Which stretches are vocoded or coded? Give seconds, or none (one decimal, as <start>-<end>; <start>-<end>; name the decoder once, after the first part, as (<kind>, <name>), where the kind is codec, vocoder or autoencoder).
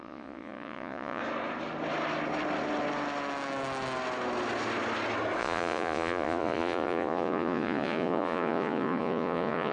0.0-1.2 (vocoder, Vocos); 5.4-9.7